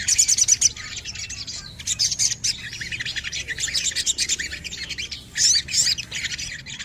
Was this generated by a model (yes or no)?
no